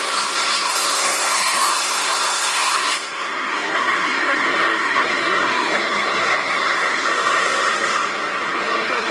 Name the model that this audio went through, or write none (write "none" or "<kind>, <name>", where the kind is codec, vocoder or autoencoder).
codec, SNAC